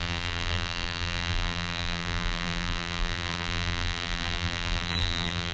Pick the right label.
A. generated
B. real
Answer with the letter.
A